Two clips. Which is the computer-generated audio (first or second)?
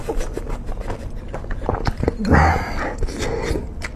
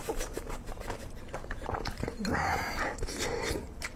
second